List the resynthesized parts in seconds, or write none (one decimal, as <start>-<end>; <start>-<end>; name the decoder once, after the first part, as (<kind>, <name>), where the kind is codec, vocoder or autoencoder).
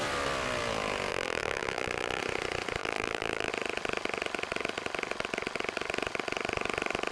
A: 1.1-2.2 (vocoder, BigVGAN v2); 2.8-3.5